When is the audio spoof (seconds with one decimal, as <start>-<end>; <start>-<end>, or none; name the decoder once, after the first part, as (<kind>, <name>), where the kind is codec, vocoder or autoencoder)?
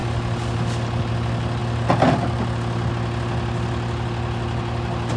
none